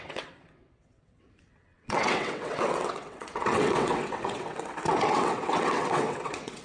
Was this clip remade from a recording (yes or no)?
yes